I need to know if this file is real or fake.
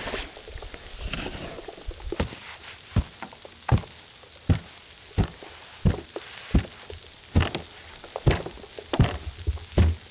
real